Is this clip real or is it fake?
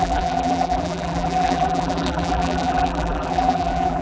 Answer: fake